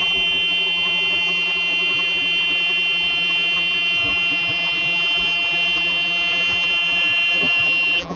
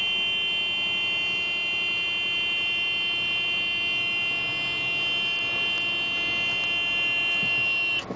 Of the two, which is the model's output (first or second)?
first